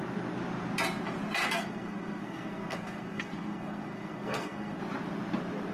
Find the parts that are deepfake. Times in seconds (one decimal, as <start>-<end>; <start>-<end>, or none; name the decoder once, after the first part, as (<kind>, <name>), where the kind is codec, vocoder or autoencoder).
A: 1.4-4.8 (codec, SNAC)